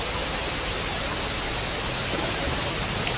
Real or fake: real